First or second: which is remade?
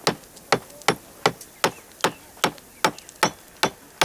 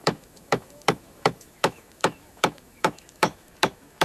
second